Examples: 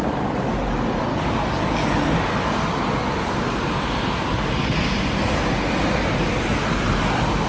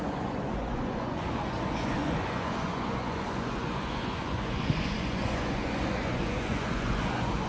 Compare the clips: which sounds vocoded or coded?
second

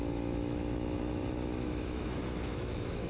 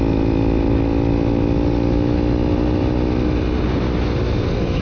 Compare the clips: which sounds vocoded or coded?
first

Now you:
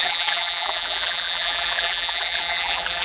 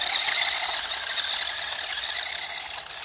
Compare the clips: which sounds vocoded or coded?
first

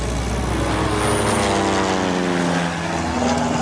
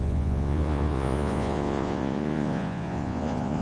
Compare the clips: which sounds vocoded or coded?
second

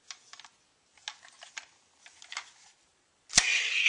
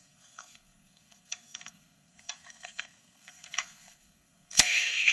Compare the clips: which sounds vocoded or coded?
second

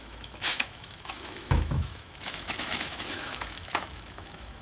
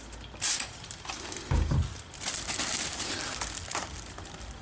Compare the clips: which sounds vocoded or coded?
first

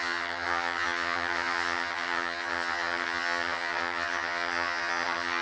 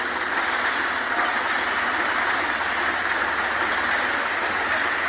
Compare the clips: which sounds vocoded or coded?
first